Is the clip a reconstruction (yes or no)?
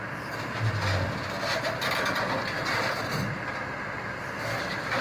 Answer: no